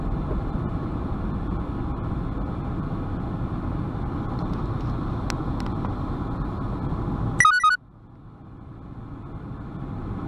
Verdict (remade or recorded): recorded